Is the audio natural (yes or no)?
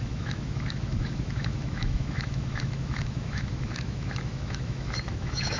no